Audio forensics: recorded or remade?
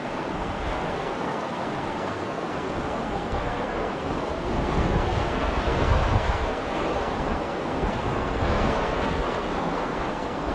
remade